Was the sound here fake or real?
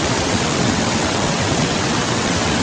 fake